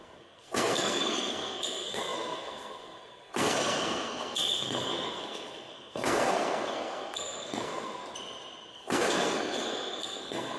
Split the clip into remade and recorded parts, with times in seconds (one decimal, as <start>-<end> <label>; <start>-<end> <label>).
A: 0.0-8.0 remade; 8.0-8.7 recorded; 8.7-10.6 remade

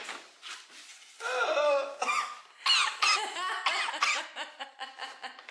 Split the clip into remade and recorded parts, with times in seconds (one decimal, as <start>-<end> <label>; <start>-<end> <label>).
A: 0.0-5.5 recorded

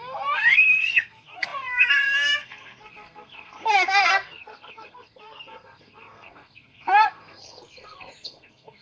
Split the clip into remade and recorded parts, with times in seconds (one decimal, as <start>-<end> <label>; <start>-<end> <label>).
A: 0.0-8.8 remade